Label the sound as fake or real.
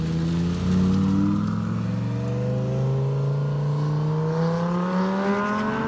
real